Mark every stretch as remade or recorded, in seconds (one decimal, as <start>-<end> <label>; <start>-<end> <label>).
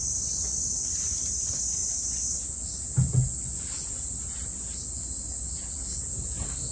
0.0-6.7 recorded